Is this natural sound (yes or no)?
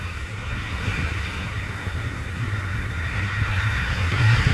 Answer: no